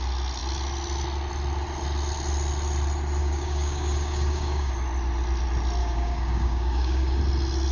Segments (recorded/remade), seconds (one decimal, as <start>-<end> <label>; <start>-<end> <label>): 0.0-3.2 recorded; 3.2-4.7 remade; 4.7-5.8 recorded; 5.8-7.2 remade; 7.2-7.7 recorded